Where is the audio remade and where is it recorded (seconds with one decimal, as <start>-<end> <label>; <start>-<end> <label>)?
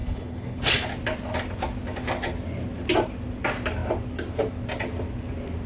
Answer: 0.0-0.9 remade; 0.9-5.7 recorded